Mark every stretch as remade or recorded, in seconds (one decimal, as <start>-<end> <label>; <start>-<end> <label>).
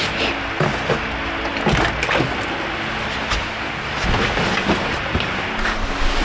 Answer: 0.0-6.2 recorded